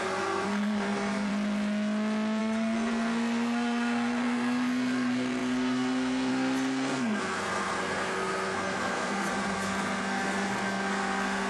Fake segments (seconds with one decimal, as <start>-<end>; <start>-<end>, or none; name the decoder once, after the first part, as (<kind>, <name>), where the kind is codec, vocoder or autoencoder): 0.0-1.3 (codec, SNAC); 2.4-11.5